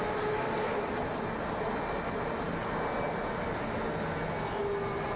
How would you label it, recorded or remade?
recorded